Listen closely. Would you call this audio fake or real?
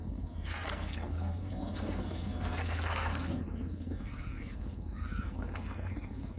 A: fake